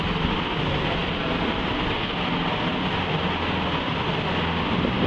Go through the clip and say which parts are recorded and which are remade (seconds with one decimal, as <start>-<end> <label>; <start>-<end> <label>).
0.0-5.1 recorded